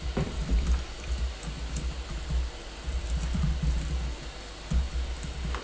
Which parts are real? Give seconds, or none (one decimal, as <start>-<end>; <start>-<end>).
0.0-5.6